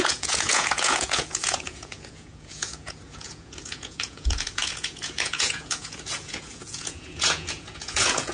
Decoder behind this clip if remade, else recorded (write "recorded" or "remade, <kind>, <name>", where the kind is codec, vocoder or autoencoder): remade, vocoder, Vocos